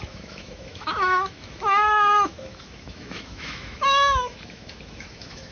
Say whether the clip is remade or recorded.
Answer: remade